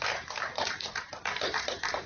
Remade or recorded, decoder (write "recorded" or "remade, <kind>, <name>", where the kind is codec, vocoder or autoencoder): remade, vocoder, BigVGAN v2